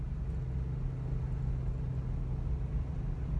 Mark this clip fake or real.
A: real